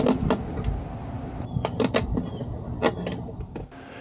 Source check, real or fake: real